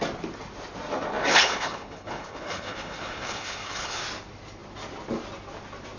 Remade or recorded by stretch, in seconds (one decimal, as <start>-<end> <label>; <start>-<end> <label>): 0.0-1.3 recorded; 1.3-4.0 remade; 4.0-6.0 recorded